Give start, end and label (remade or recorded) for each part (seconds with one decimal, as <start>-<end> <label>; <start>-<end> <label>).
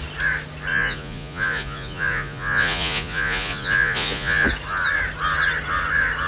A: 0.0-0.7 recorded; 0.7-4.5 remade; 4.5-6.3 recorded